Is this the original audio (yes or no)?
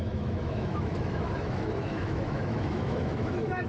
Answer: no